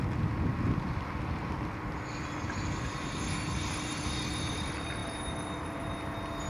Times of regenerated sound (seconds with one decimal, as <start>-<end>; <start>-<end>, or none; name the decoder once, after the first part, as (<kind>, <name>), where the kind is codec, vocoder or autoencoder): none